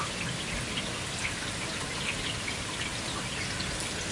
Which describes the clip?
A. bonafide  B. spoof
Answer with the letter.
A